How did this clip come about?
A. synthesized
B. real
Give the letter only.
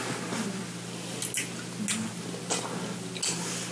B